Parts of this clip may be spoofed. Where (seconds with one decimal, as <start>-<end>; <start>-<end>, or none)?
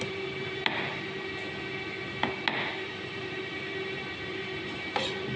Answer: 0.0-0.6; 2.7-5.4